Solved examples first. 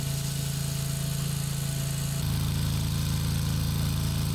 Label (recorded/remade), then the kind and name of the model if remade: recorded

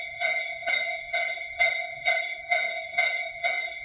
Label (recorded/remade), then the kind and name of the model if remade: remade, codec, SNAC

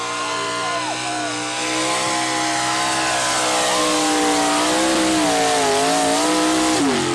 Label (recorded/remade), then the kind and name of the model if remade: recorded